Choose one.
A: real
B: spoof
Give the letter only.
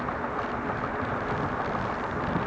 A